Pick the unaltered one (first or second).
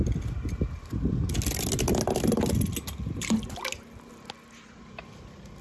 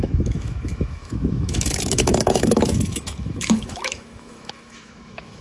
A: first